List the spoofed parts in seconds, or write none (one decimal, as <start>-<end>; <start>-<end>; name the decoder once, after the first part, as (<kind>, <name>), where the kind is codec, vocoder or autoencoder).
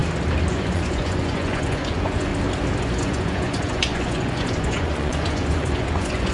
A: 0.5-2.3 (vocoder, Vocos); 2.8-6.3